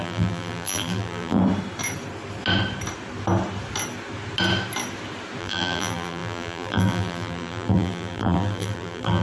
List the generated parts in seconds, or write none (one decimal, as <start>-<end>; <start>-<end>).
0.0-1.4; 5.4-9.2